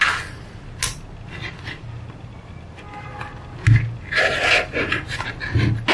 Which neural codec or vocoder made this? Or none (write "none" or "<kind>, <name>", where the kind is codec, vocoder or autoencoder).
none